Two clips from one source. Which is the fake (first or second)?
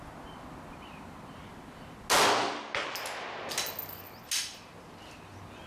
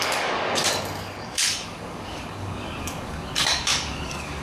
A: second